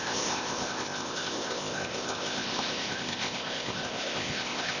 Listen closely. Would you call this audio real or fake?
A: fake